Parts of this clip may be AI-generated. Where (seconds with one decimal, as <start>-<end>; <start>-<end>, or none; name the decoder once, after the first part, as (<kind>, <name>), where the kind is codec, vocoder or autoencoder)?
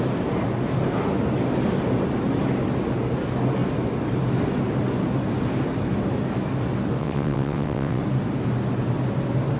7.0-8.0 (vocoder, WaveNeXt)